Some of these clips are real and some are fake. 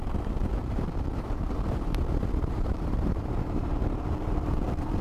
fake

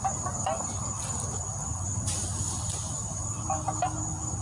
real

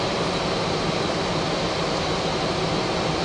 real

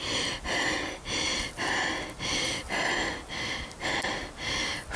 real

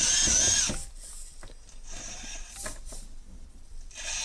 real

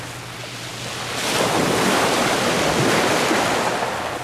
real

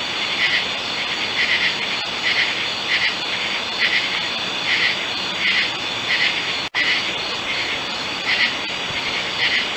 real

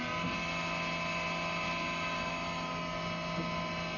real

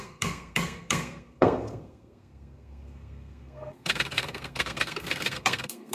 fake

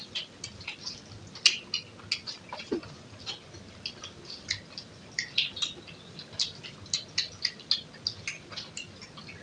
real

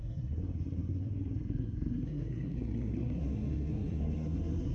fake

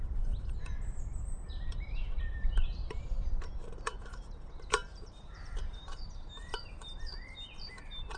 fake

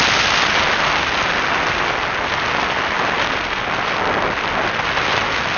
real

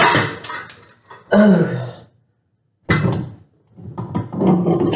real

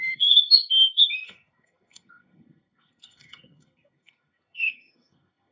fake